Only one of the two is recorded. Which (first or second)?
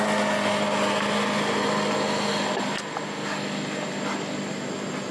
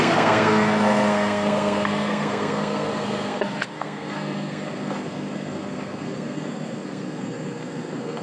first